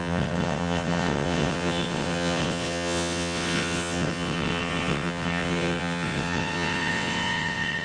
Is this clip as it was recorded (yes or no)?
no